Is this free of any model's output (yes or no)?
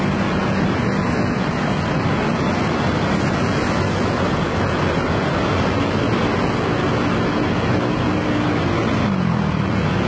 yes